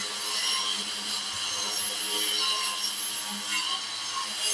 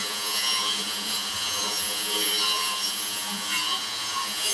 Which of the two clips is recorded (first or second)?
first